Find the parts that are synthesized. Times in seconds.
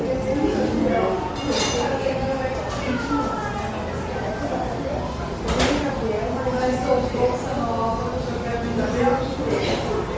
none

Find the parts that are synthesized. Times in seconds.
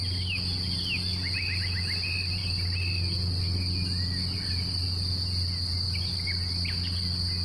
none